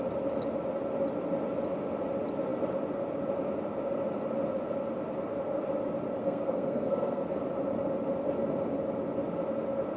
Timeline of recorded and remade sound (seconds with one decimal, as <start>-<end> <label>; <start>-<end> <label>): 0.0-6.2 recorded; 6.2-7.4 remade; 7.4-10.0 recorded